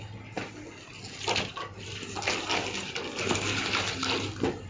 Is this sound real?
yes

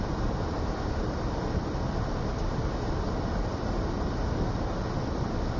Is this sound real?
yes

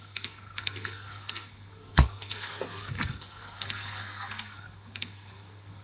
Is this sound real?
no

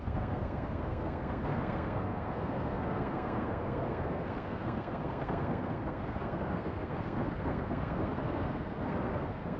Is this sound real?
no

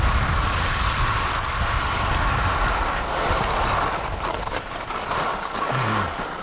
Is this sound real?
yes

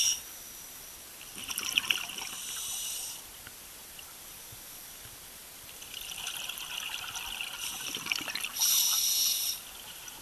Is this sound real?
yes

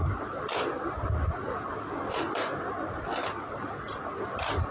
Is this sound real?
yes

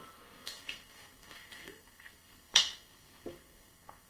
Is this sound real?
no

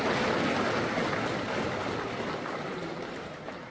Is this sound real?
yes